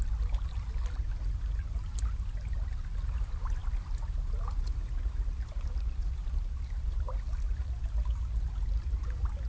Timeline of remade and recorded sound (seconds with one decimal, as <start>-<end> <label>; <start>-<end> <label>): 0.0-9.5 recorded